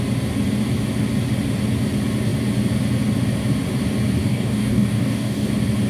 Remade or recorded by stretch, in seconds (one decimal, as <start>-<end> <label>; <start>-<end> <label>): 0.0-4.2 recorded; 4.2-5.5 remade; 5.5-5.9 recorded